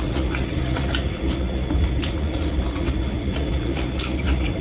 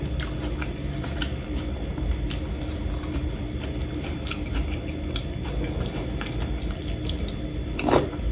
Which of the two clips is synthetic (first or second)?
first